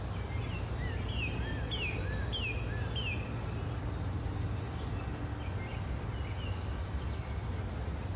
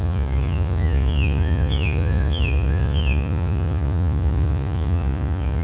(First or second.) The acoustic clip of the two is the first